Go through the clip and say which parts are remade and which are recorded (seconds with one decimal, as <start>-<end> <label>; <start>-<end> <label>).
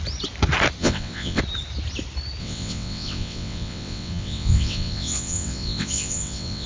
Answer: 0.0-0.8 recorded; 0.8-1.4 remade; 1.4-2.4 recorded; 2.4-6.7 remade